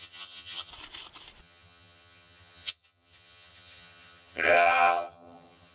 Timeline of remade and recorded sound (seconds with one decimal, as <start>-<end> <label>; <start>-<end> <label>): 0.0-0.7 remade; 0.7-1.4 recorded; 1.4-5.7 remade